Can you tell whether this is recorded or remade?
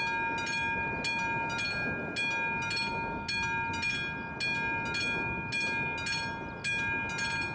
recorded